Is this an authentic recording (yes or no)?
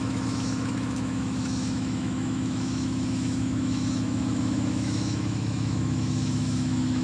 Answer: no